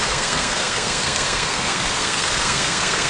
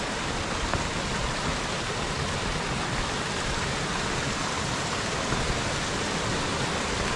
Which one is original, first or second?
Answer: second